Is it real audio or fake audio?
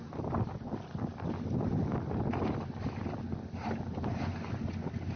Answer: real